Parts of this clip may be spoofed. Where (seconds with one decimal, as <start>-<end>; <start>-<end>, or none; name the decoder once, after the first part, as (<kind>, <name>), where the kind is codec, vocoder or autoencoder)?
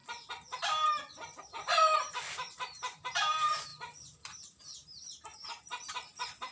1.4-3.7 (vocoder, BigVGAN v2); 4.6-6.5